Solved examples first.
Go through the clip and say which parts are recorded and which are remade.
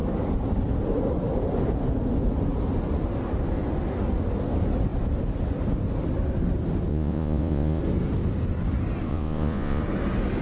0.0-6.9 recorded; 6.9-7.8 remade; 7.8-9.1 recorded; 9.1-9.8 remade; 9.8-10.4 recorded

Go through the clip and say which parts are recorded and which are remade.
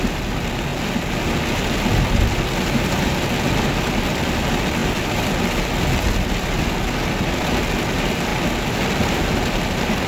0.0-10.1 recorded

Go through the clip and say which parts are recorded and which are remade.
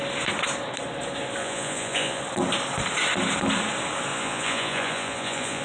0.0-1.4 recorded; 1.4-2.2 remade; 2.2-4.1 recorded; 4.1-5.6 remade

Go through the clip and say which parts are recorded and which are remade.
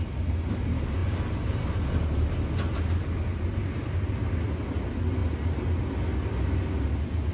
0.0-7.3 recorded